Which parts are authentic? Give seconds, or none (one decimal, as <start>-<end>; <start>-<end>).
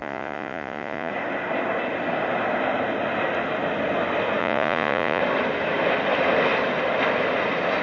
1.1-4.4; 5.2-7.8